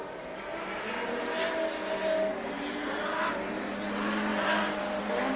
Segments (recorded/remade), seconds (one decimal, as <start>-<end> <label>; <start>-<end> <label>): 0.0-2.3 recorded; 2.3-3.3 remade; 3.3-5.4 recorded